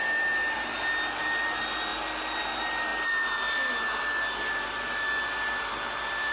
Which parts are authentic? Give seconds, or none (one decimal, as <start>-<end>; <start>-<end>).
0.0-6.3